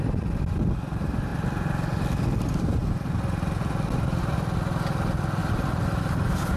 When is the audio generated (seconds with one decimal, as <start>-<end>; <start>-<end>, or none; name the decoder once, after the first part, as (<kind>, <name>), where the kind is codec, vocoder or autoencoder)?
5.4-6.0 (vocoder, BigVGAN v2)